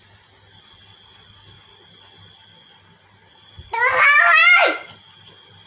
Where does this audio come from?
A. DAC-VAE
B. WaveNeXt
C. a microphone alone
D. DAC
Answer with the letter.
C